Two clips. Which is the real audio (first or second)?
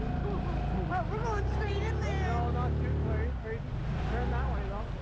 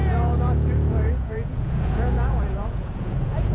first